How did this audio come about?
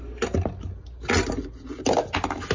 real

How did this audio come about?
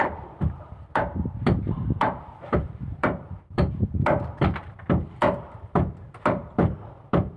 fake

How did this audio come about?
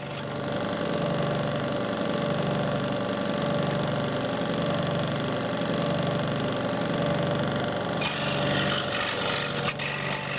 real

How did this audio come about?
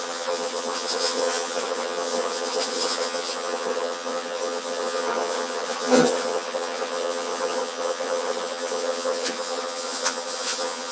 fake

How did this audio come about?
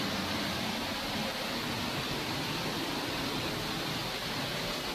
real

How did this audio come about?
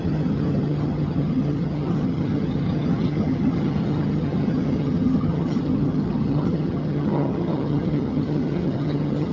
fake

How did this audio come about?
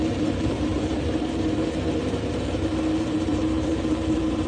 fake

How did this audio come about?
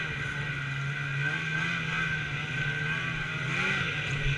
real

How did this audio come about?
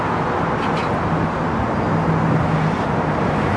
real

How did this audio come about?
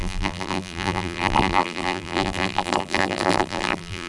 fake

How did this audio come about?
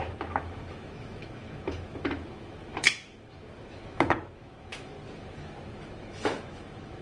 fake